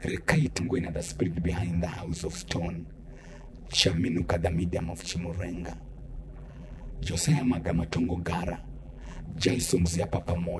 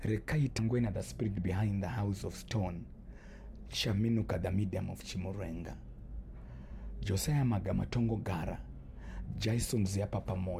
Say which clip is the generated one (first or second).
first